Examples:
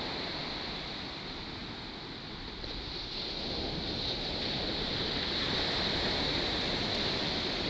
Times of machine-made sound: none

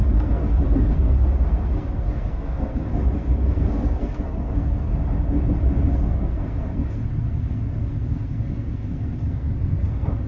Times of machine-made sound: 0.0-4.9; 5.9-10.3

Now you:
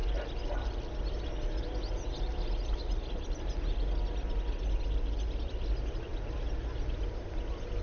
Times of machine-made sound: none

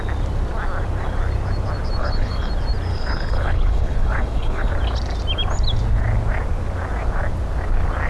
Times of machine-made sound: 2.0-2.5; 2.9-4.7

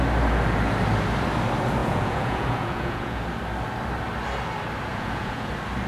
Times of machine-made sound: 1.8-3.2; 4.9-5.5